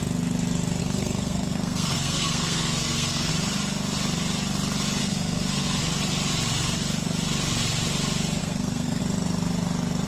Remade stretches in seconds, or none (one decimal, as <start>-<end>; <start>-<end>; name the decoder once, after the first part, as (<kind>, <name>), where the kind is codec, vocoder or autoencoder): 0.8-3.3 (codec, SNAC); 5.0-5.8; 8.4-9.0